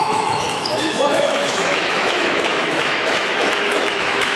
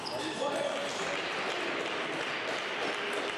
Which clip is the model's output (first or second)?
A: first